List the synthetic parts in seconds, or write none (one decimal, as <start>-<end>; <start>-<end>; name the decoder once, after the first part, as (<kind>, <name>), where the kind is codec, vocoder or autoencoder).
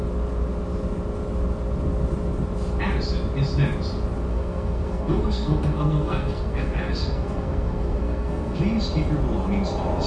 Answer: 4.3-8.6 (codec, SNAC)